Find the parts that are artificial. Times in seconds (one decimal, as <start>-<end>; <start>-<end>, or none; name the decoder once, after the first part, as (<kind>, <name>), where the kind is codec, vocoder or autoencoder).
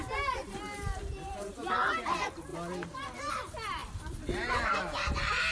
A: 0.0-2.5 (vocoder, BigVGAN v2); 3.3-5.5